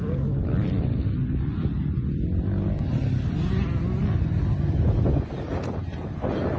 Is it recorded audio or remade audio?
recorded